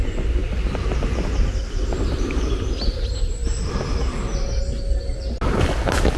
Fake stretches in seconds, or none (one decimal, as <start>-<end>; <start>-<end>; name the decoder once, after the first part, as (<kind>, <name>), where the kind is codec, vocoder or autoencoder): none